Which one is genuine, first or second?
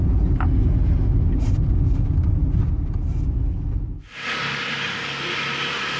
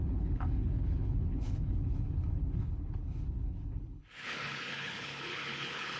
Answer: first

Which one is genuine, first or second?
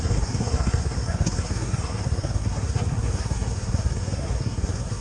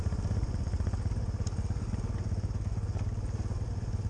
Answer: second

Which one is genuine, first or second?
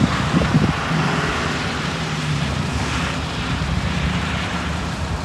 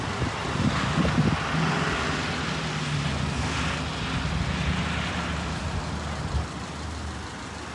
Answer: second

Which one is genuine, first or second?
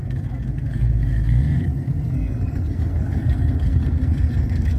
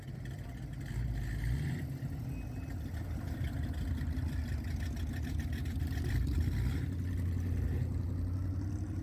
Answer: second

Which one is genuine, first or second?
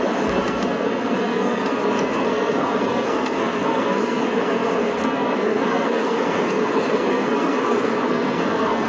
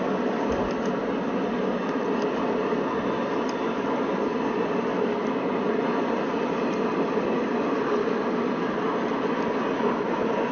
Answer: second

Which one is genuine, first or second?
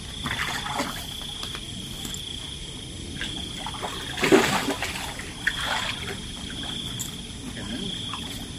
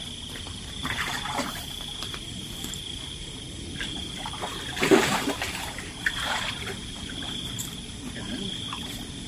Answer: first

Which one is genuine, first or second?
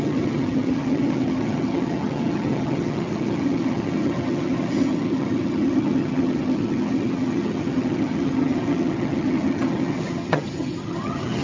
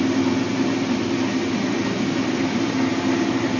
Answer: second